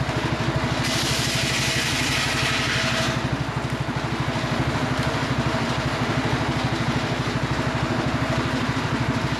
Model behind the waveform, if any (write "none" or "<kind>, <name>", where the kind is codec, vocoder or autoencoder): none